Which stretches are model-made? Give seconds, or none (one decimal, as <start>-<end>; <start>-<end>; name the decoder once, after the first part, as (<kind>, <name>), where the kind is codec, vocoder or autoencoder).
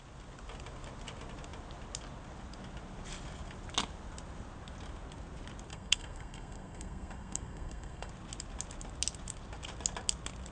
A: 5.7-8.1 (codec, SNAC)